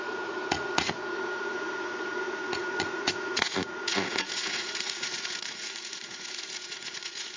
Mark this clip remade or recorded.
remade